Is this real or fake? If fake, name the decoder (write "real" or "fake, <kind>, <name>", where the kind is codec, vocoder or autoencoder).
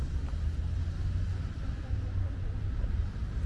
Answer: real